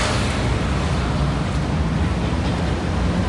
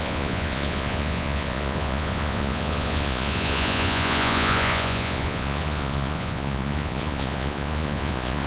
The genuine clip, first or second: first